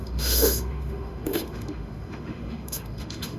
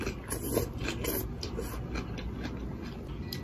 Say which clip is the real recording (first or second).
second